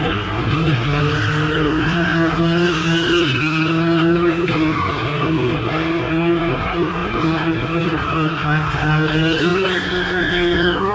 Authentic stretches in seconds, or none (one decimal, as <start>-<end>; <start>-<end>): 1.0-1.5